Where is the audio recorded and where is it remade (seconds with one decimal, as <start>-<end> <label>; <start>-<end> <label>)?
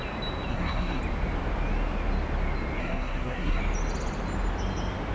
0.0-0.5 recorded; 0.5-1.0 remade; 1.0-2.8 recorded; 2.8-3.6 remade; 3.6-5.1 recorded